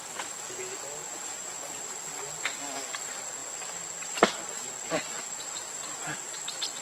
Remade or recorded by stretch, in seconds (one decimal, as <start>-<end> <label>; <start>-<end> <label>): 0.0-1.0 recorded; 1.0-1.7 remade; 1.7-6.8 recorded